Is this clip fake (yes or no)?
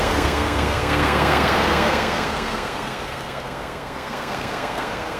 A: yes